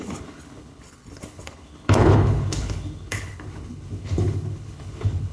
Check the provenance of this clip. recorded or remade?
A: remade